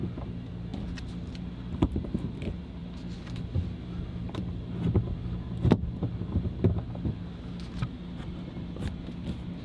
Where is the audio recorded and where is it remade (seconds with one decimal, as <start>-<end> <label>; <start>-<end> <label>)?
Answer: 0.0-9.6 recorded